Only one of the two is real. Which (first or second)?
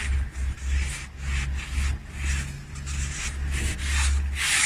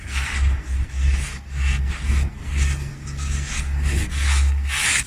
first